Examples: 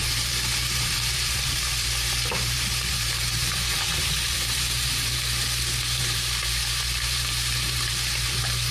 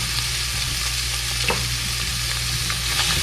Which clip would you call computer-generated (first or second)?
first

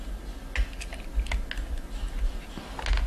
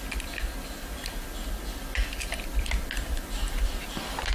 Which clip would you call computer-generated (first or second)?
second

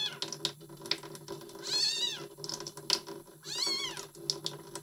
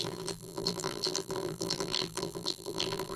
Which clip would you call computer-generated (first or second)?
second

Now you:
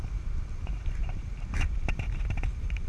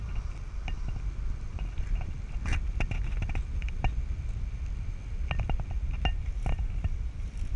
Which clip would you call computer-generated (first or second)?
first